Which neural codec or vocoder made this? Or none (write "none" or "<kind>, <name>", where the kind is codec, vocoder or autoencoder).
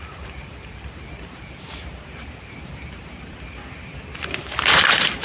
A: vocoder, BigVGAN v2